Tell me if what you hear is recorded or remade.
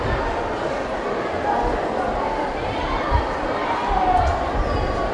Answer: recorded